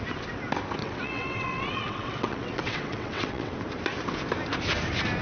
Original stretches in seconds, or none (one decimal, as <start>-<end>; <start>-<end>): 0.0-0.8; 3.5-5.2